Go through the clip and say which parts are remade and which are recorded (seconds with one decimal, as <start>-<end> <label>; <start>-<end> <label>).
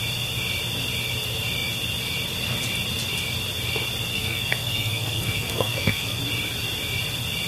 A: 0.0-4.1 recorded; 4.1-6.2 remade; 6.2-7.5 recorded